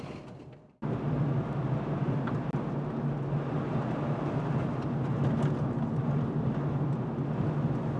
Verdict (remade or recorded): recorded